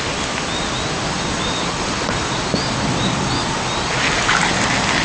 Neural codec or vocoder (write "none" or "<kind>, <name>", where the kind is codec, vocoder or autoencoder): none